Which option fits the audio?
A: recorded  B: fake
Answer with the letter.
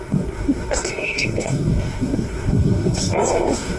B